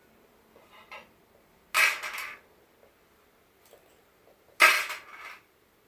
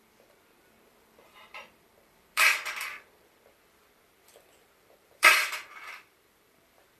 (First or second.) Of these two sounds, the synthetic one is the second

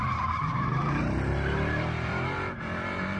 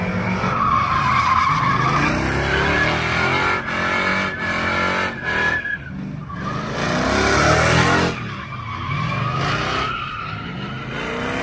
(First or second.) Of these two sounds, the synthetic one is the first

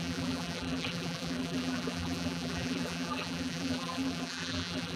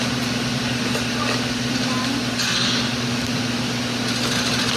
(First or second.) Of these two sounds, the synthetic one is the first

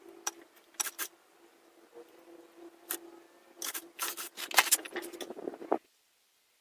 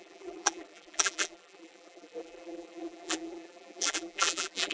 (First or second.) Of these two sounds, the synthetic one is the second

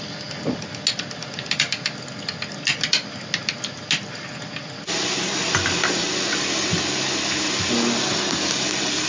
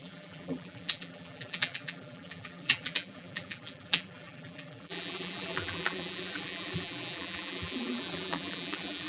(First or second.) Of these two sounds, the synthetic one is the second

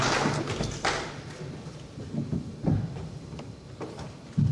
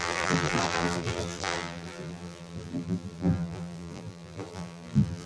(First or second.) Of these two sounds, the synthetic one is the second